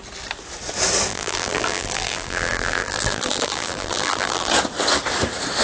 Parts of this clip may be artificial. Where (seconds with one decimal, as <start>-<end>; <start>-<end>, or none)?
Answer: 1.1-4.5